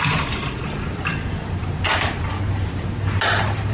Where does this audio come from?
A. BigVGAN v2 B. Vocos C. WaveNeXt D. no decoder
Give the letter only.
D